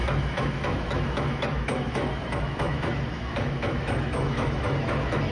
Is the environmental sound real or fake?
fake